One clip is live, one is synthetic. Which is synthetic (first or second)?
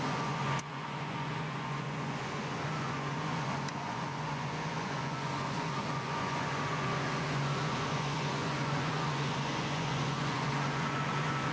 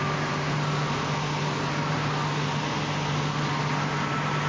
first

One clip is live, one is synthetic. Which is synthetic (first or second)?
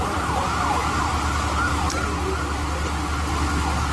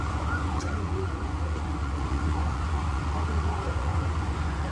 second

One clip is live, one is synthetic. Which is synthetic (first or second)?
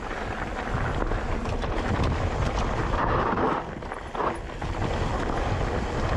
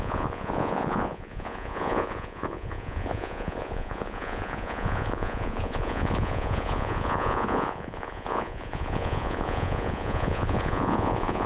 second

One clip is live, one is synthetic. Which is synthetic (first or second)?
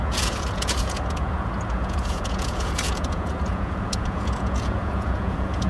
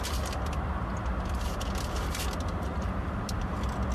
first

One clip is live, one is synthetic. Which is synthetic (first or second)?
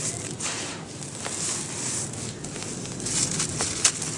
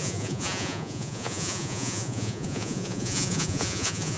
second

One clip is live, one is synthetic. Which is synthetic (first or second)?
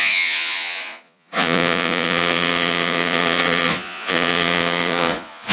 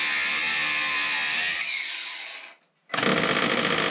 first